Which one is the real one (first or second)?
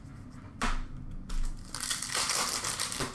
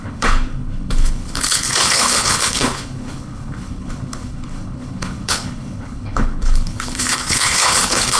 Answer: first